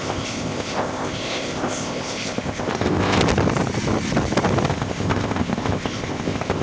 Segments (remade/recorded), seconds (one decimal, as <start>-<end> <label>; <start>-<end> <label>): 0.0-3.2 remade; 3.2-4.7 recorded; 4.7-6.6 remade